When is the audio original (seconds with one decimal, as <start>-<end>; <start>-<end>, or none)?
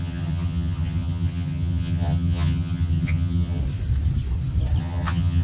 3.6-4.8